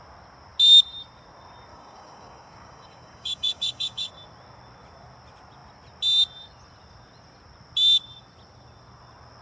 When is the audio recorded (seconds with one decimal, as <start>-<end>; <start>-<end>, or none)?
0.0-1.7; 4.1-9.4